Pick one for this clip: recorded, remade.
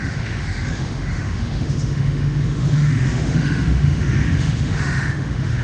remade